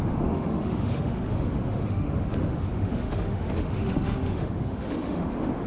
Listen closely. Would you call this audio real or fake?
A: fake